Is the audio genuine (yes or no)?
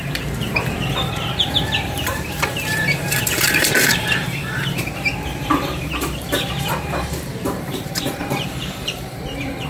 no